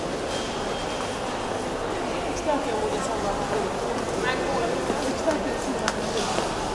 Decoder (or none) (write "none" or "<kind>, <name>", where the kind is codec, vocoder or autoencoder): none